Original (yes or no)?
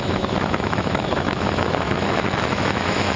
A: no